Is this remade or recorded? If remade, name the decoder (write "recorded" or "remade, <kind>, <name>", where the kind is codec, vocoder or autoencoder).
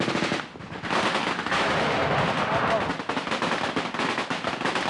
recorded